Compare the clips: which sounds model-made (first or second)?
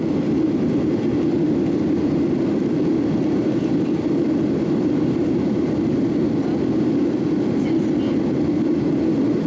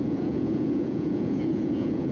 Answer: second